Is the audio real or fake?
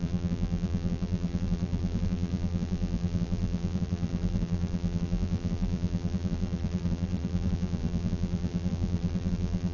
fake